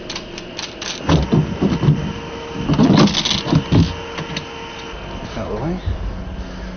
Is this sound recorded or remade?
recorded